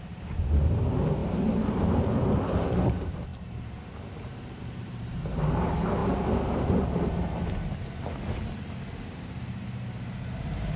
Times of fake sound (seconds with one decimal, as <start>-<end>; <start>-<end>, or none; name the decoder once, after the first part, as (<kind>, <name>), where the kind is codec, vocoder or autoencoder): 0.0-7.4 (vocoder, BigVGAN v2); 9.1-10.8

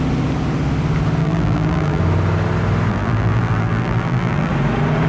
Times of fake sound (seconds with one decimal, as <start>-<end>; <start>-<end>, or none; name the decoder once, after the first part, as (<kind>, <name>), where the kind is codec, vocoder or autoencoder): 1.2-2.0 (vocoder, BigVGAN v2); 2.9-4.5